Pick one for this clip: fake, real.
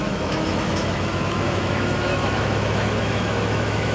fake